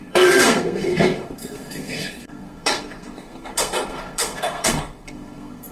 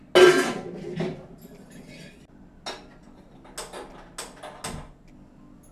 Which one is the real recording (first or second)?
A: second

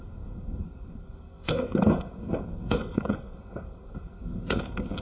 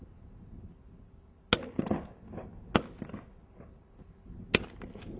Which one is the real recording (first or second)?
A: second